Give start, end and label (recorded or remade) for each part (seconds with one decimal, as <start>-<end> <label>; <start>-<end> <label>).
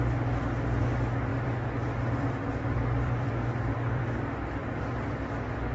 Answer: 0.0-1.3 recorded; 1.3-4.3 remade; 4.3-5.7 recorded